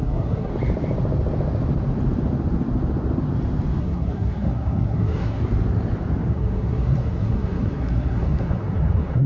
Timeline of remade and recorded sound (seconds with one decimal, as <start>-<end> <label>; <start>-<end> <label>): 0.0-0.5 remade; 0.5-3.8 recorded; 3.8-5.4 remade; 5.4-6.3 recorded; 6.3-9.3 remade